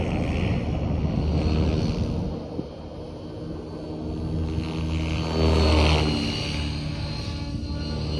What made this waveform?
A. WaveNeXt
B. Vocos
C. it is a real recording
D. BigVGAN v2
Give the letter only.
C